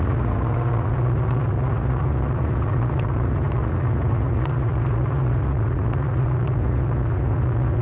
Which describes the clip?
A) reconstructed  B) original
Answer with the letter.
A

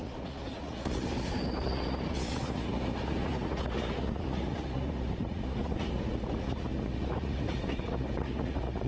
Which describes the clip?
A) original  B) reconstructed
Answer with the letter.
B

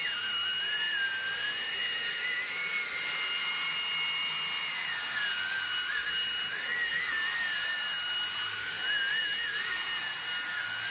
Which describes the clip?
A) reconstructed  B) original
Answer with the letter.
B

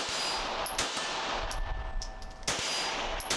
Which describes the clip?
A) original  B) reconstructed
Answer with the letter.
A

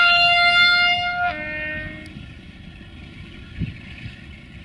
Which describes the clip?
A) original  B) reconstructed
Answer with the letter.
A